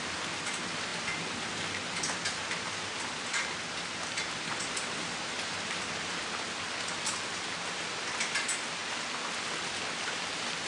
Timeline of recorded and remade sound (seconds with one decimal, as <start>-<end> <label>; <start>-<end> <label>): 0.0-10.7 recorded